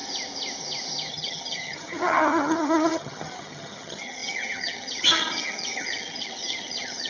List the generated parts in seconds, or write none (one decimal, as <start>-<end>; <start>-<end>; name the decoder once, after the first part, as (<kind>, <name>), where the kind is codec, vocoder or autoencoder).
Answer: 1.1-7.1 (vocoder, HiFi-GAN)

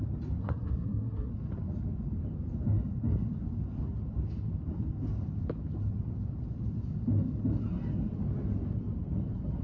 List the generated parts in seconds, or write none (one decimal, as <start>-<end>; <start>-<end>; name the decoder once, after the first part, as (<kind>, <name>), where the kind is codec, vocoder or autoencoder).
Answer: 0.4-1.3 (codec, SNAC)

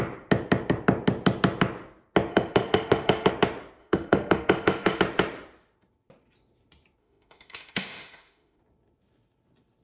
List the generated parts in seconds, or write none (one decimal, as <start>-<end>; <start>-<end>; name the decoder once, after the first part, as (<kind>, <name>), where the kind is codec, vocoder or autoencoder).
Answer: 2.3-3.3 (autoencoder, DAC-VAE); 3.8-5.0; 7.0-8.6

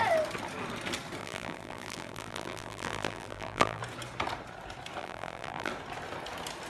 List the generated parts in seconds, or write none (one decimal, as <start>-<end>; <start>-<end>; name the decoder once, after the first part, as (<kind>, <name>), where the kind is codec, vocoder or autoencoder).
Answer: 1.2-3.8 (vocoder, BigVGAN v2); 5.0-5.7

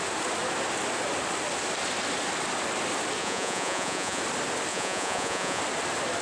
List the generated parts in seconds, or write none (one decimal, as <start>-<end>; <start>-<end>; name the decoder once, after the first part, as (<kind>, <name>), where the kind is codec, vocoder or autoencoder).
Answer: 3.2-4.2 (vocoder, Vocos); 4.7-5.6

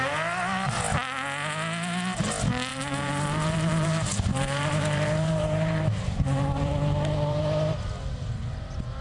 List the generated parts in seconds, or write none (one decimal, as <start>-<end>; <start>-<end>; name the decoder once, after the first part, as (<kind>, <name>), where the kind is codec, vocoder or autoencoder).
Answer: 2.7-7.4 (vocoder, BigVGAN v2)

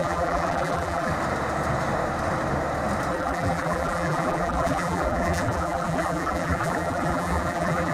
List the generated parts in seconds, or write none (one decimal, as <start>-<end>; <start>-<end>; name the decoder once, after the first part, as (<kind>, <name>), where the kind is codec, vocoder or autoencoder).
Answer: 0.0-1.1 (vocoder, BigVGAN v2); 3.1-7.9